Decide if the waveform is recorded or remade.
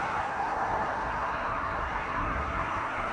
remade